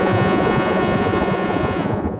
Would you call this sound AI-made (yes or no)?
yes